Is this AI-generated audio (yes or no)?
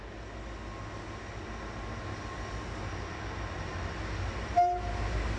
no